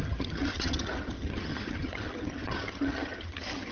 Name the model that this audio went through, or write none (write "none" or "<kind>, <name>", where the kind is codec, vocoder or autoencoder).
vocoder, HiFi-GAN